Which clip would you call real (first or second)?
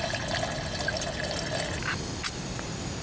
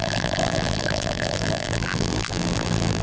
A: first